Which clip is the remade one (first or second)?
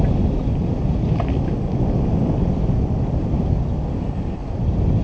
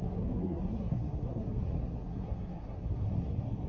second